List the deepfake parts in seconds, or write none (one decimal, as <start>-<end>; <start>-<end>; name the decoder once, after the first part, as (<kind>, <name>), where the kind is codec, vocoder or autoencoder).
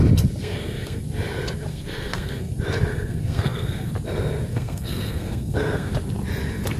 0.4-1.0 (codec, SNAC); 1.7-2.5; 2.9-3.9; 4.5-5.9